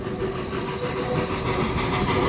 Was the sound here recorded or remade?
recorded